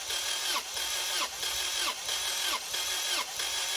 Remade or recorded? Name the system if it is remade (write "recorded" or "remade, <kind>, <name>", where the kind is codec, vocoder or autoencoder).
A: recorded